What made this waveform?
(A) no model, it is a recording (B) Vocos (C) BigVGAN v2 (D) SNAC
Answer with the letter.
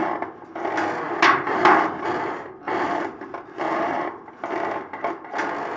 A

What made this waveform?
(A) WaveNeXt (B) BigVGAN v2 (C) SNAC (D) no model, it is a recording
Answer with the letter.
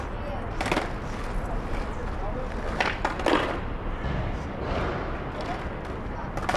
D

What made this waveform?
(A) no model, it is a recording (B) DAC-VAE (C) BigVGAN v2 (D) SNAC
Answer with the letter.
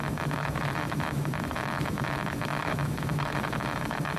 B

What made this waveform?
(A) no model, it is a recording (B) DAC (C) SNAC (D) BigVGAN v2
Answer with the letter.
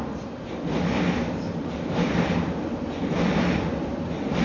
D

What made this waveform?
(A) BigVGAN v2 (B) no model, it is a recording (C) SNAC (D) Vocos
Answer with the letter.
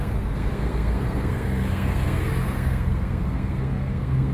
C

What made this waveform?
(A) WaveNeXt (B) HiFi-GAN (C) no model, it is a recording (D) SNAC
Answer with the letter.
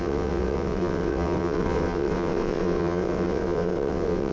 A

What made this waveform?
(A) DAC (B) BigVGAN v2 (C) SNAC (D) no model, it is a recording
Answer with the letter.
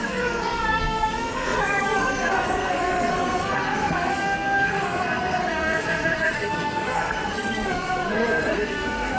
C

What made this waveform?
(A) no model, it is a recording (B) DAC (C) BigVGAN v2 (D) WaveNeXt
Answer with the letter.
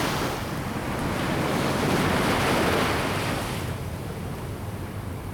A